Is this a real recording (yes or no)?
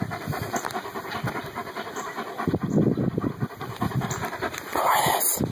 yes